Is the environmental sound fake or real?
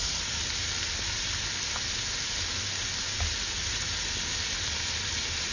real